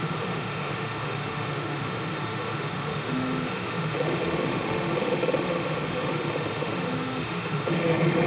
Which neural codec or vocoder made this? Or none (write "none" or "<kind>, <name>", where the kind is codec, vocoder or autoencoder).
autoencoder, DAC-VAE